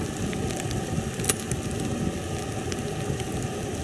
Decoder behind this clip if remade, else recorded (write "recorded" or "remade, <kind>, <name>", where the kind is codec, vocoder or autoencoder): recorded